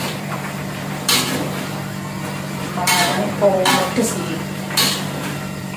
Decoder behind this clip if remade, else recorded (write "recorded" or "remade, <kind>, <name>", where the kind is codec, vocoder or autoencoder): remade, vocoder, BigVGAN v2